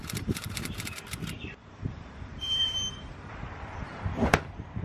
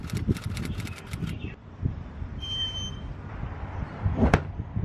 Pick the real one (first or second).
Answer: second